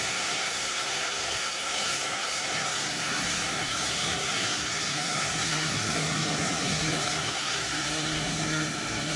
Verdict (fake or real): fake